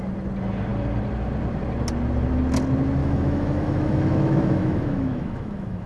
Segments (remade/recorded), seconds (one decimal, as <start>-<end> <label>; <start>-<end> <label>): 0.0-3.0 recorded; 3.0-5.9 remade